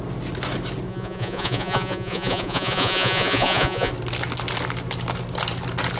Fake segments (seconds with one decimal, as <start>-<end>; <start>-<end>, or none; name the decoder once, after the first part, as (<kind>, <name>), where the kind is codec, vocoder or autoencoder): 0.9-3.9 (vocoder, Vocos)